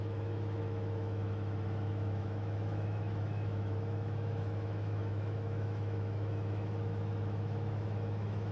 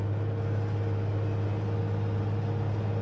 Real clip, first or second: second